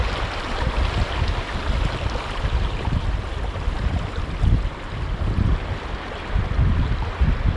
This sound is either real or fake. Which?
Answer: real